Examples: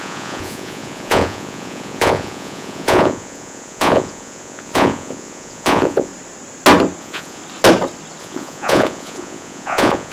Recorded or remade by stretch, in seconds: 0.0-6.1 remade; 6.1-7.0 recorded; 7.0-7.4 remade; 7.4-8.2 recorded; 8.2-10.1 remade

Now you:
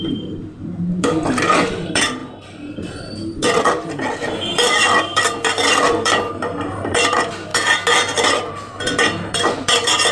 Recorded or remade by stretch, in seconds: 0.0-7.5 remade; 7.5-8.5 recorded; 8.5-10.1 remade